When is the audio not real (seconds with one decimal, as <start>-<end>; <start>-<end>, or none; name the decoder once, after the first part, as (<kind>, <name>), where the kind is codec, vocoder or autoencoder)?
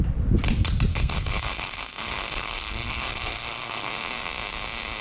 0.9-3.9 (codec, SNAC)